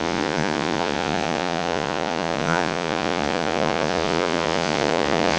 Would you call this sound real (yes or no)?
no